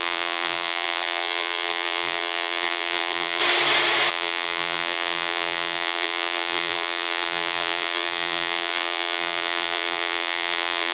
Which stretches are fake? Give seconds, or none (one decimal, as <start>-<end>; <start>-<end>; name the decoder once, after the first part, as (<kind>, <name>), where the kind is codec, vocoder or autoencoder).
0.0-3.4 (vocoder, BigVGAN v2); 4.1-10.9